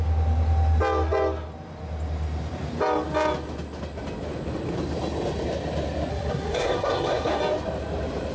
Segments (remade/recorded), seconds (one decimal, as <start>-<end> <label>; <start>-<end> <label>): 0.0-6.1 recorded; 6.1-7.4 remade; 7.4-8.3 recorded